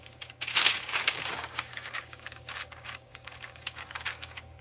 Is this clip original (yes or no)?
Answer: no